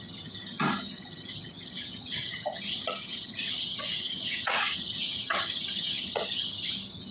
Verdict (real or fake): fake